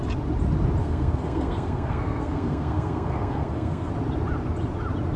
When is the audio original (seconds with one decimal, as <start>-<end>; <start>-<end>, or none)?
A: 0.0-0.8; 3.9-5.2